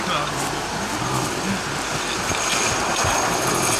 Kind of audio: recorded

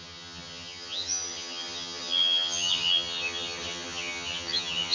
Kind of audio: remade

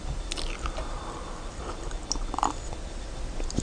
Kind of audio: recorded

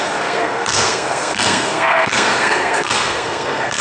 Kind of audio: remade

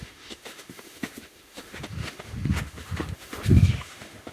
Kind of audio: remade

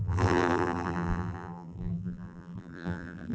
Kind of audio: remade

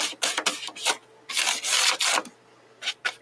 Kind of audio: recorded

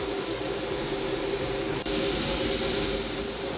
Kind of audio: recorded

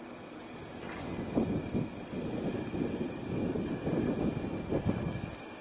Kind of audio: recorded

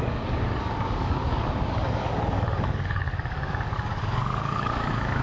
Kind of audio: remade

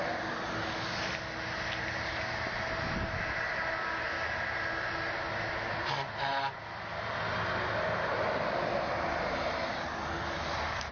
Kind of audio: recorded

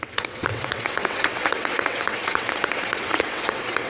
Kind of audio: remade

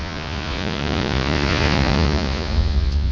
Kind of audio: remade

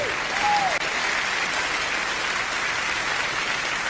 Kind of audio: recorded